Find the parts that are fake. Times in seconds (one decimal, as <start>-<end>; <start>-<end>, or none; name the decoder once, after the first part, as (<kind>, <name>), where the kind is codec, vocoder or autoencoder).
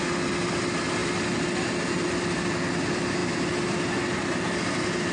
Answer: none